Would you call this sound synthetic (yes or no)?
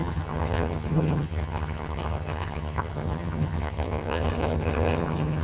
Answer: yes